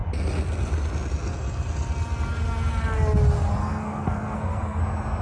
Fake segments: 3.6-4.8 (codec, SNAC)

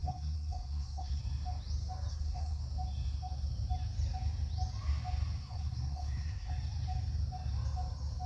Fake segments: 0.0-1.2 (codec, SNAC); 2.1-2.6; 5.4-6.5

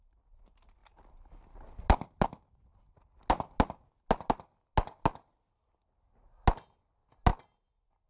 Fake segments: none